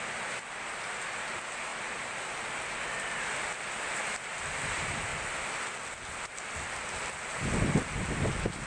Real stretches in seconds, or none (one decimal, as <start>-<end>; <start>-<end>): 0.0-8.7